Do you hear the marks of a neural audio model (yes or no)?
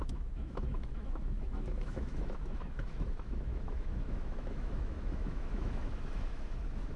yes